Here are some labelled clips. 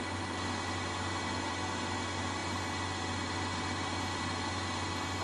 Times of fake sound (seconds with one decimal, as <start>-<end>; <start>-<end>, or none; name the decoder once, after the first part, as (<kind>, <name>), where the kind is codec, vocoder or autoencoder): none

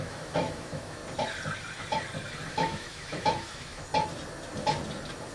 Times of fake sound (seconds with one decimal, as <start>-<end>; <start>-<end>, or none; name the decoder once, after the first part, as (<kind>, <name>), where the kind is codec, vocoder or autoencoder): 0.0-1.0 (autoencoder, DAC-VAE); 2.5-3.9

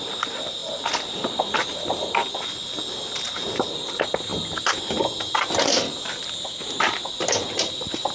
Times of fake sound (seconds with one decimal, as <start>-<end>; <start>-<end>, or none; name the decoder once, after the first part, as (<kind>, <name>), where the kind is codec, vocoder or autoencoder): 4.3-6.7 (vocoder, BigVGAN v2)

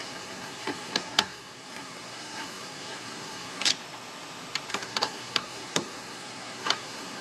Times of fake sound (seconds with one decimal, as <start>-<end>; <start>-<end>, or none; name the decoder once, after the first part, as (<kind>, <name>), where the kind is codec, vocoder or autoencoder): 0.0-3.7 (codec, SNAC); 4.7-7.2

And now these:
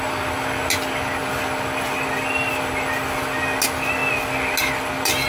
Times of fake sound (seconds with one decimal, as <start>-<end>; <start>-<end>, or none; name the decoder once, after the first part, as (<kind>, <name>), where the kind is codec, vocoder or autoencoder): none

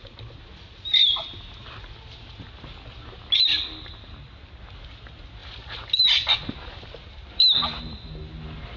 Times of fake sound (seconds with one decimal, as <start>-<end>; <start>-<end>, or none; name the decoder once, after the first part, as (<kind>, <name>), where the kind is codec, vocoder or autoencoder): none